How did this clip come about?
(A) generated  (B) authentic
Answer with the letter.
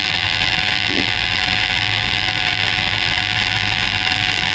A